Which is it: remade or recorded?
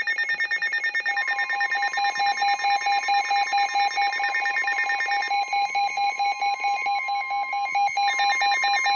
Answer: recorded